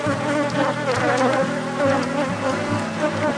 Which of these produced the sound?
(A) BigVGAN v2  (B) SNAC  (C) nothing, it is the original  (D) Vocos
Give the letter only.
C